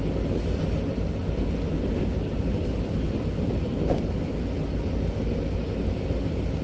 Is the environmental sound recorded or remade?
recorded